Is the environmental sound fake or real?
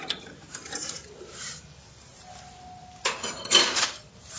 real